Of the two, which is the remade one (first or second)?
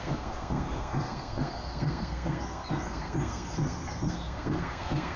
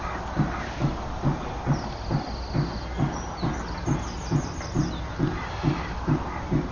first